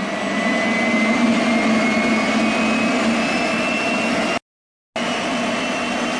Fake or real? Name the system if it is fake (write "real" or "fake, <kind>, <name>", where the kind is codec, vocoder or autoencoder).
real